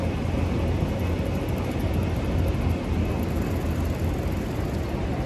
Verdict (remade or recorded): recorded